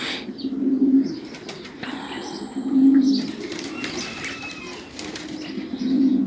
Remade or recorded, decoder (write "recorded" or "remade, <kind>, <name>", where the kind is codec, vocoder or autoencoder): recorded